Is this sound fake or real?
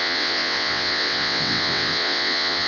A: fake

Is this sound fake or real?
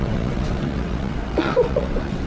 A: fake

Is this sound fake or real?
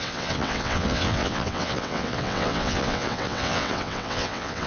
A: fake